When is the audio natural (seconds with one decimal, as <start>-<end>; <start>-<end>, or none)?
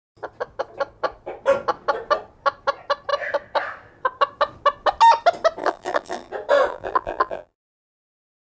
0.0-5.6; 6.3-6.7